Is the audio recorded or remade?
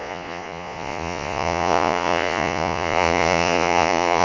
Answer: remade